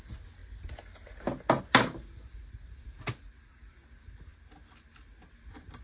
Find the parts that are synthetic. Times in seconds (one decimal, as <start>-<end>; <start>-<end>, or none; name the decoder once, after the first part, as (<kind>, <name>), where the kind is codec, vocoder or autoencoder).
none